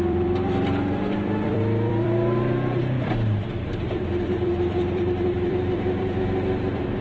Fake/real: fake